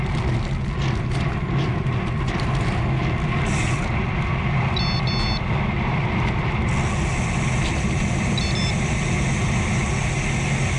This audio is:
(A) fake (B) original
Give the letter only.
B